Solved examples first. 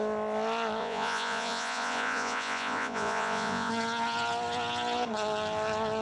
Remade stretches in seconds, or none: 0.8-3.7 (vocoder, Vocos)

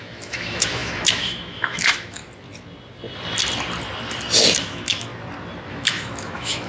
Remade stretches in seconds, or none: 0.0-2.2 (autoencoder, DAC-VAE); 4.6-5.1; 5.7-6.7

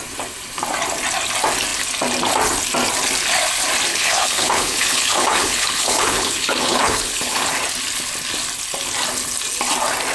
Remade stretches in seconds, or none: 3.9-7.5 (codec, HILCodec)